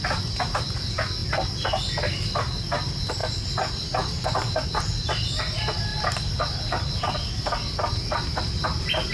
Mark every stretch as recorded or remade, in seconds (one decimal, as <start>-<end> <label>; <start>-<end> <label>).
0.0-9.1 recorded